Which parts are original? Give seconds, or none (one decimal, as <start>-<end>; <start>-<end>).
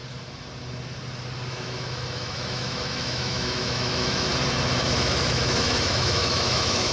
0.0-1.5; 4.3-4.8